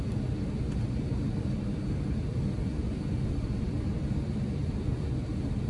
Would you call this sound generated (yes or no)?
no